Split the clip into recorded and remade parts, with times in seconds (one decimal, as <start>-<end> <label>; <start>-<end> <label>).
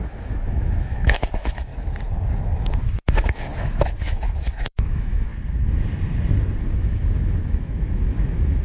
0.0-1.7 remade; 1.7-2.7 recorded; 2.7-5.3 remade; 5.3-6.6 recorded; 6.6-8.6 remade